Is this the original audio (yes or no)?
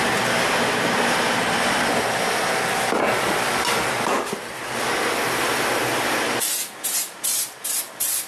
yes